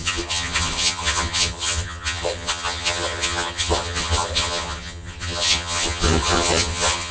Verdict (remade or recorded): remade